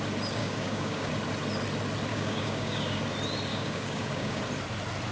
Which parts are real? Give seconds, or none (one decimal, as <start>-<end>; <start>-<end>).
0.0-0.4; 1.1-2.1; 3.0-3.5; 4.4-5.1